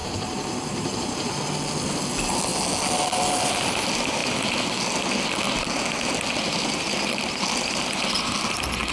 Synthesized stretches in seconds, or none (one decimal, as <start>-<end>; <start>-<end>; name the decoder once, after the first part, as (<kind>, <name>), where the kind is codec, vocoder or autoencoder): 0.0-1.5 (vocoder, BigVGAN v2)